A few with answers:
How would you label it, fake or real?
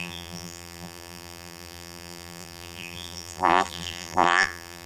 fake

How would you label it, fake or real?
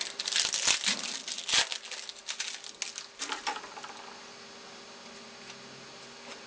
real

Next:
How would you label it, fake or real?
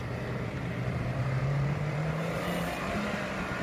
fake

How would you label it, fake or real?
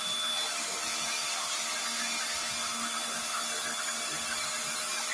real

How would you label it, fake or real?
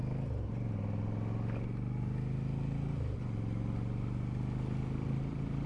real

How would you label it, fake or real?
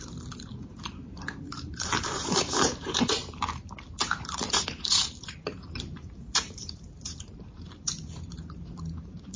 fake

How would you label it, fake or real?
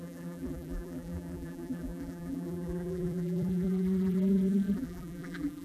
fake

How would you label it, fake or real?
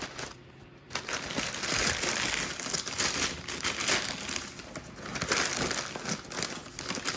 real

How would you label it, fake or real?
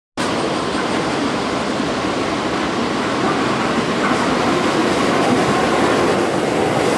real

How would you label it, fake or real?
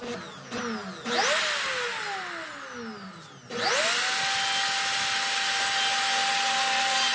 real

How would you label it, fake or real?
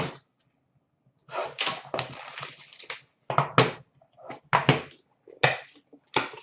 real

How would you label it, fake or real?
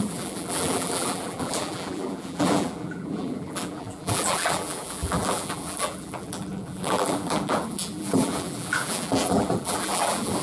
fake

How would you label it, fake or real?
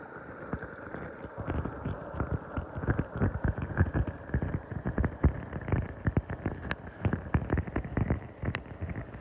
fake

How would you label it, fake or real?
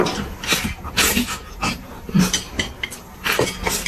real